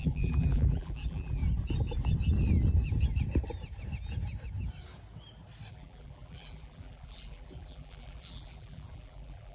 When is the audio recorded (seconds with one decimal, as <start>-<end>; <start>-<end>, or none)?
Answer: 1.4-5.7